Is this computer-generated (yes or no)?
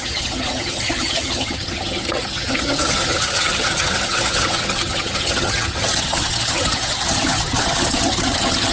yes